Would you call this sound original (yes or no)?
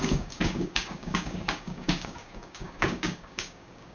no